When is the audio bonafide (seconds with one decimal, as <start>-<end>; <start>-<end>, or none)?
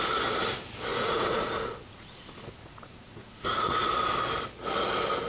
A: 0.0-0.9; 3.9-5.3